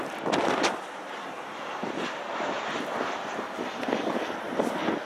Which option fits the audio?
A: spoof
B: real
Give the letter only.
B